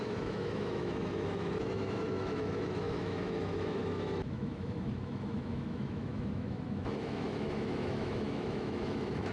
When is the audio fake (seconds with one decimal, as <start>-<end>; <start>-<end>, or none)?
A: 0.0-9.3